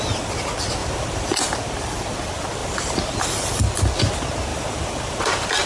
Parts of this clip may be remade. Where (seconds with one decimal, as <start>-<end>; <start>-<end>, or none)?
0.8-1.4; 2.6-3.2; 4.5-5.3